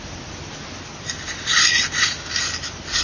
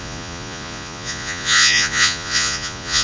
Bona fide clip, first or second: first